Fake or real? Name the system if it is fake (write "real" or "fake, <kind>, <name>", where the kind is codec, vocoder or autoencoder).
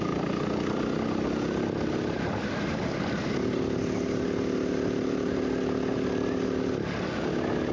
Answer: real